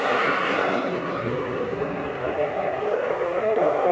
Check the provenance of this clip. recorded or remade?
remade